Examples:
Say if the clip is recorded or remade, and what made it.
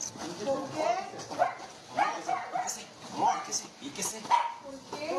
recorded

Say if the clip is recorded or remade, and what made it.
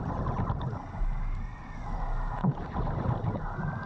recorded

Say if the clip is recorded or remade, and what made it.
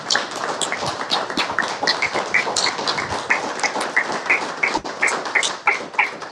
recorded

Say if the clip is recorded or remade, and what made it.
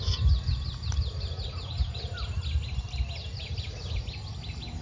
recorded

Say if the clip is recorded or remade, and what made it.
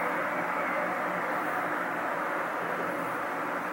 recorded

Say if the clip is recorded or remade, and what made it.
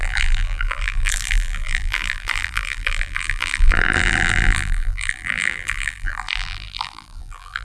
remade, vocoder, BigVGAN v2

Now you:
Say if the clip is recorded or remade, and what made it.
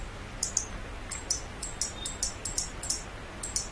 recorded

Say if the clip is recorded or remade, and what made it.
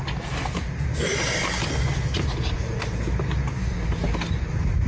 recorded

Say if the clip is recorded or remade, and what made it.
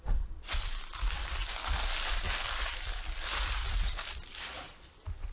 remade, vocoder, BigVGAN v2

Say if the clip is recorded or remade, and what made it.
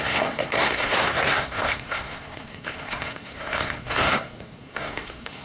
remade, codec, SNAC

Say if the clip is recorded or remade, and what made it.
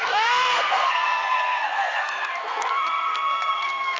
remade, codec, SNAC